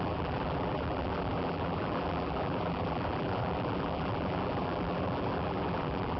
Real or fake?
fake